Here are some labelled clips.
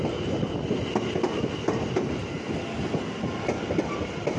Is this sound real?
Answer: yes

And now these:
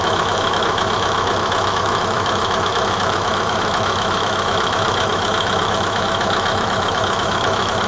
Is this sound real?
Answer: no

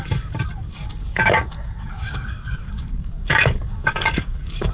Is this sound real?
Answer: no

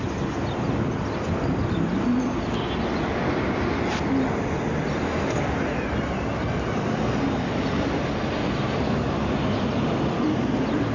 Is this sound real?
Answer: yes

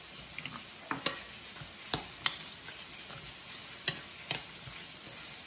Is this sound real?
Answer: yes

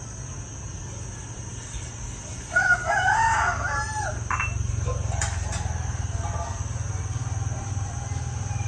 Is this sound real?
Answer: yes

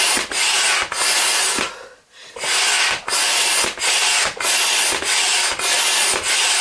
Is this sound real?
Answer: yes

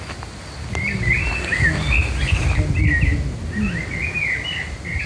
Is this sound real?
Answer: yes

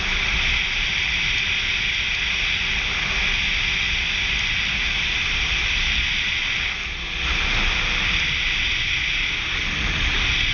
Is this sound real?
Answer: yes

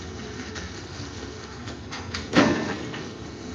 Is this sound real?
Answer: no